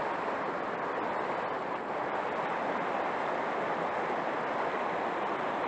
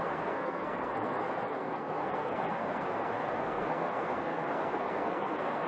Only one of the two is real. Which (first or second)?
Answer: first